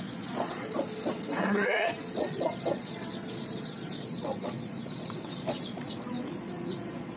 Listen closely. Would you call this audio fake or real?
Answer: fake